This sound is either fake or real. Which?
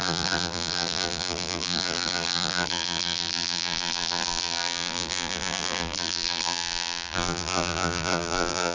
fake